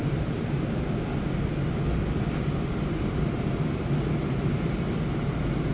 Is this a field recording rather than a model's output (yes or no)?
yes